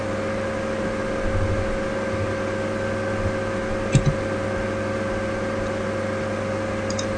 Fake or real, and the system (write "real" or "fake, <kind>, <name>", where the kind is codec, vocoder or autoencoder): real